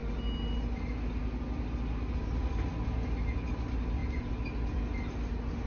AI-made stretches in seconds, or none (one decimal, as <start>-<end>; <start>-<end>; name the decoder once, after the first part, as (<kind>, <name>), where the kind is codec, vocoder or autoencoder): none